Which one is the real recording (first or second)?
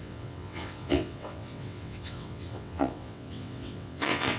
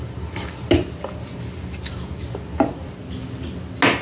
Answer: second